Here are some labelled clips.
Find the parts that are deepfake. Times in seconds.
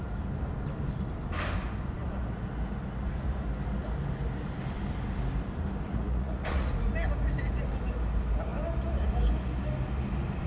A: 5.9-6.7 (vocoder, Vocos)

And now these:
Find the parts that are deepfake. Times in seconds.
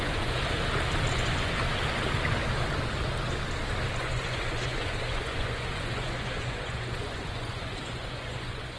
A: 0.0-0.4 (vocoder, Vocos); 1.1-1.6; 4.0-8.8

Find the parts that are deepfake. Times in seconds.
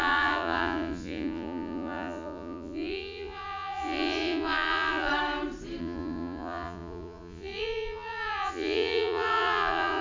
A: 0.0-5.1 (vocoder, Vocos); 5.8-10.0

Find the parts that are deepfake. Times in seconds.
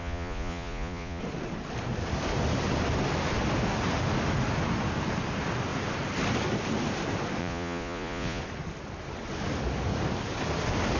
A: 0.0-1.2 (vocoder, Vocos); 7.4-8.4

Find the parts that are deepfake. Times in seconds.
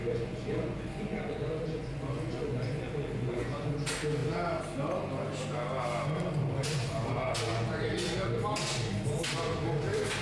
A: 0.0-3.7 (vocoder, Vocos); 7.5-8.4